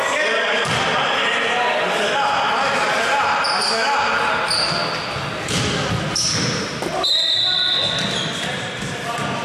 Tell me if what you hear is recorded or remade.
recorded